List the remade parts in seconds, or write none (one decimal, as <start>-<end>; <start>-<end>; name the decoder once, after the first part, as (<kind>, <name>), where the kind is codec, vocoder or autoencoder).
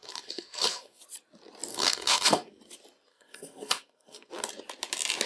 0.0-1.0 (codec, SNAC); 1.7-2.6; 3.1-4.3